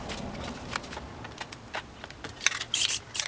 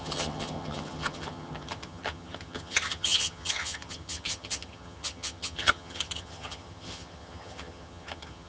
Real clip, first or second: first